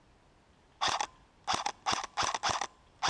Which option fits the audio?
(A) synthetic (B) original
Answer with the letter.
B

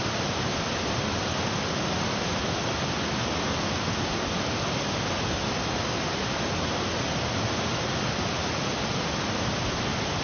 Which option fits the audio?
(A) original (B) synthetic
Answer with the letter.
A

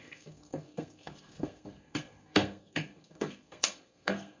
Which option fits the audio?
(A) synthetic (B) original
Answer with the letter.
A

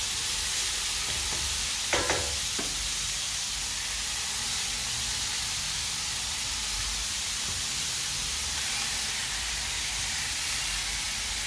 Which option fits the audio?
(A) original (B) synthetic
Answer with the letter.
A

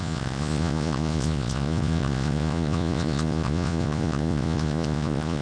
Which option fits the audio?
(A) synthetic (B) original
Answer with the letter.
A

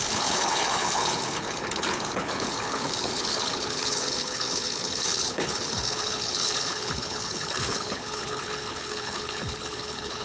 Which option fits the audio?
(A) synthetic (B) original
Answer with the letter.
A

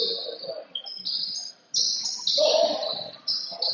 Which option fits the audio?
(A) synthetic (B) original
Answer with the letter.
B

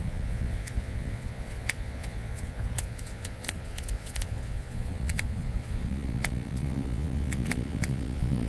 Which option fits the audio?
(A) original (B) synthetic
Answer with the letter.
B